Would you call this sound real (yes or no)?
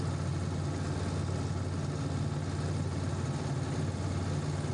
yes